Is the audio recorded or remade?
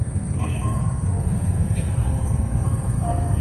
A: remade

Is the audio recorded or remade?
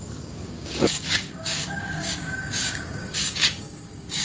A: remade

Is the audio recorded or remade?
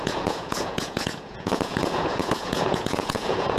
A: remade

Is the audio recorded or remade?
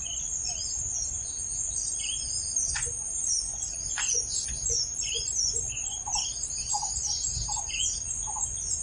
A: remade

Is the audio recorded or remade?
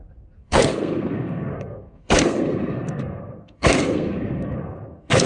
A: remade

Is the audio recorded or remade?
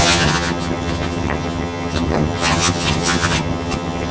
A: remade